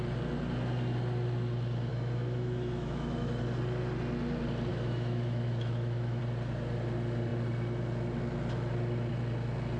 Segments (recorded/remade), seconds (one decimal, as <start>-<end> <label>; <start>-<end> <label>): 0.0-1.9 recorded; 1.9-3.4 remade; 3.4-4.7 recorded; 4.7-6.2 remade; 6.2-9.8 recorded